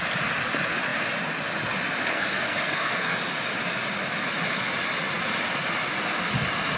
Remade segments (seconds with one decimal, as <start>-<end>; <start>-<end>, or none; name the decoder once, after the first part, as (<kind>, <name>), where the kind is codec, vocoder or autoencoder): 2.1-3.2 (codec, SNAC)